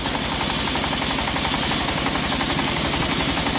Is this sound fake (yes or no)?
no